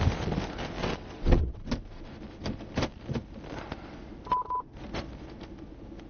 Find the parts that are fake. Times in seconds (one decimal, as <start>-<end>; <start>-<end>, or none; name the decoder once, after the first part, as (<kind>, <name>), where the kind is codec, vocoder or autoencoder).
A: 0.8-1.7 (vocoder, WaveNeXt)